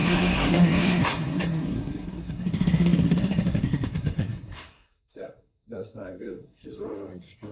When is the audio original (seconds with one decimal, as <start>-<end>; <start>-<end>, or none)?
none